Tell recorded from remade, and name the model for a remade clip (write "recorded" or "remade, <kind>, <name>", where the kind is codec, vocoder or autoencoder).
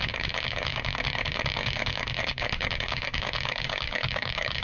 remade, codec, DAC